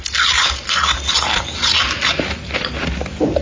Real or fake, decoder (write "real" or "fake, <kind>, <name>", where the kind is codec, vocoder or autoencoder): real